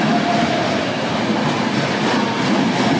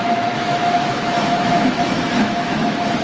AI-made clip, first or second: second